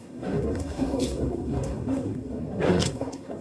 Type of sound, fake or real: fake